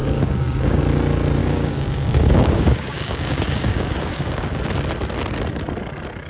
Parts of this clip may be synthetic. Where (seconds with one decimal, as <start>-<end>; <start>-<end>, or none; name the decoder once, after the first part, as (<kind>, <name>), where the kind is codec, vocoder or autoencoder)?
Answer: 0.0-0.8 (codec, DAC); 1.4-4.6